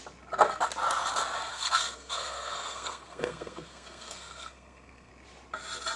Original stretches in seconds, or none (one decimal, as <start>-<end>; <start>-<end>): 0.0-1.5; 5.1-6.0